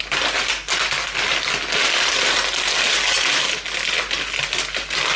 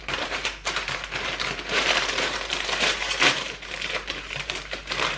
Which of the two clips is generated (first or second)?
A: second